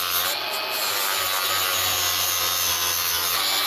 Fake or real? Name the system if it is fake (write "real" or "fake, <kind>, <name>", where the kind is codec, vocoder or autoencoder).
real